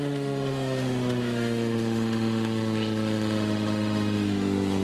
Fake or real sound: fake